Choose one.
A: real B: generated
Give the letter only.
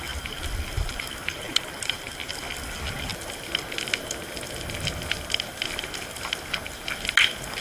A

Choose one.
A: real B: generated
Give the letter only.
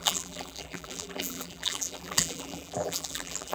B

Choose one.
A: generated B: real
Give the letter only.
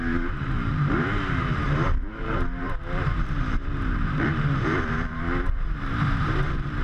A